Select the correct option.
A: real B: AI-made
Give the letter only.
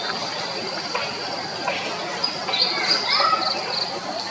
A